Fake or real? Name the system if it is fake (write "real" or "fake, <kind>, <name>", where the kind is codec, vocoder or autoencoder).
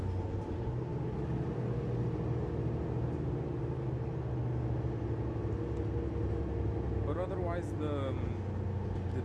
real